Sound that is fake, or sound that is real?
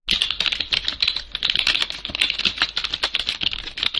real